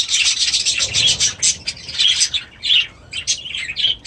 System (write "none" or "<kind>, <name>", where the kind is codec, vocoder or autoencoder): none